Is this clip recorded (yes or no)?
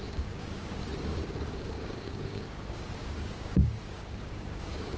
no